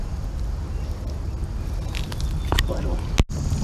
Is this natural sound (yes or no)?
yes